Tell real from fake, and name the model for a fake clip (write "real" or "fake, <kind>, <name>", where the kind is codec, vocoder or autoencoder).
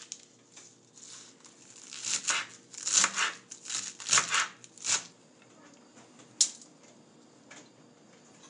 real